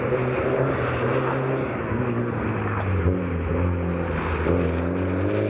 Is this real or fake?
real